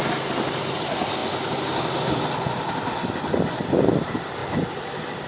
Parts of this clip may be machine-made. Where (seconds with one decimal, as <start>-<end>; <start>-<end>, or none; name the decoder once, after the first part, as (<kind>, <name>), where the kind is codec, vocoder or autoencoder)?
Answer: none